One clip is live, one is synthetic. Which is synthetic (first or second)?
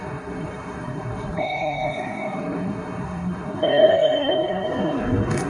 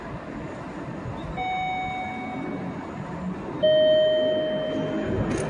first